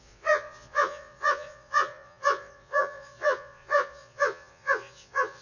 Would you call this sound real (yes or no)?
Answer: no